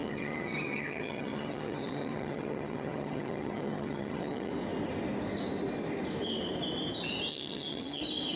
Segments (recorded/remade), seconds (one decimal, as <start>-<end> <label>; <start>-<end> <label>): 0.0-4.5 remade; 4.5-7.3 recorded; 7.3-8.0 remade; 8.0-8.4 recorded